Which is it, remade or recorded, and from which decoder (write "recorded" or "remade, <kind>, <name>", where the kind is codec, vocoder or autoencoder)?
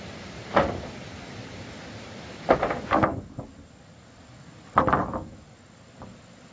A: recorded